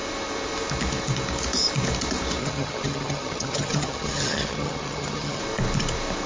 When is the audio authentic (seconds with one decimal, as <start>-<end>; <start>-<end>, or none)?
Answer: 0.0-2.4; 5.4-6.3